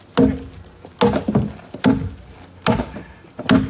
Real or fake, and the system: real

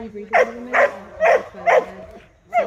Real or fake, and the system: real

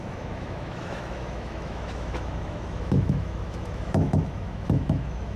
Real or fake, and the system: fake, autoencoder, DAC-VAE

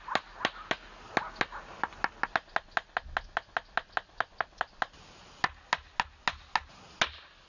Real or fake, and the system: real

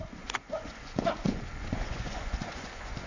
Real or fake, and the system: fake, vocoder, Vocos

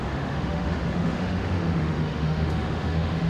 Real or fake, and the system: fake, autoencoder, DAC-VAE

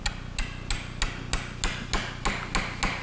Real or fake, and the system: real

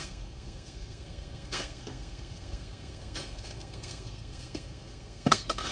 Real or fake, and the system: fake, codec, SNAC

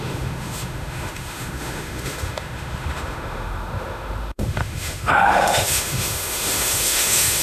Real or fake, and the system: fake, autoencoder, DAC-VAE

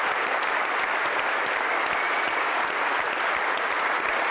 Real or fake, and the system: real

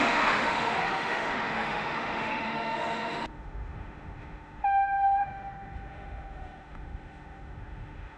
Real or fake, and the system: fake, autoencoder, DAC-VAE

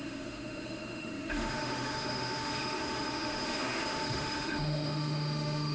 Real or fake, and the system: fake, autoencoder, DAC-VAE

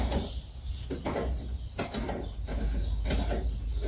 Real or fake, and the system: real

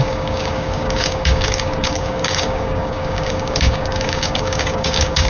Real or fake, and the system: fake, codec, DAC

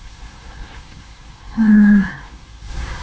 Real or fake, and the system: fake, codec, SNAC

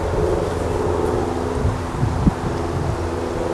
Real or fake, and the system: real